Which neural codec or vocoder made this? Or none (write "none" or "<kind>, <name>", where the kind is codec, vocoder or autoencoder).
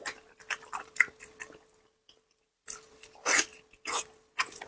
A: none